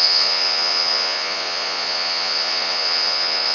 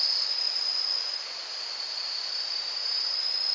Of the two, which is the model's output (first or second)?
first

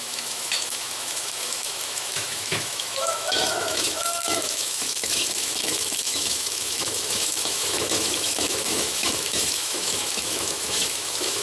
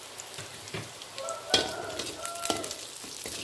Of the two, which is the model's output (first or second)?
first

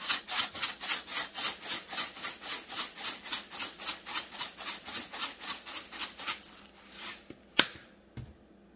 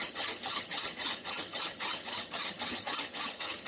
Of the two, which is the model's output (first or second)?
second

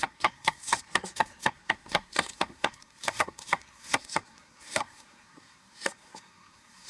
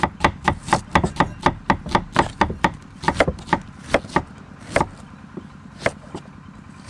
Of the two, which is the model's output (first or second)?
first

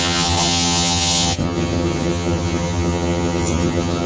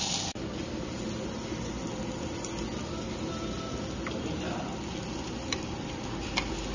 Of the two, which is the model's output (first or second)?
first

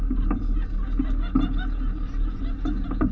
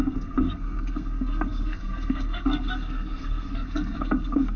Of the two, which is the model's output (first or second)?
second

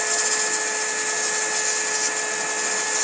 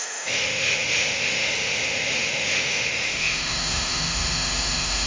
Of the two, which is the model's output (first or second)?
second